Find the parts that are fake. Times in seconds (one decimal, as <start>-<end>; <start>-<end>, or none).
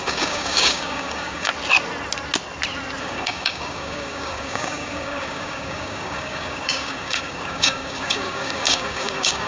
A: 0.0-1.5; 3.0-9.5